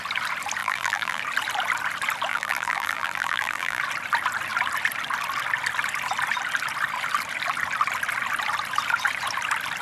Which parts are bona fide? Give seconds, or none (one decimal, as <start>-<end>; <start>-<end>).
0.0-0.6; 1.2-2.3; 3.8-9.8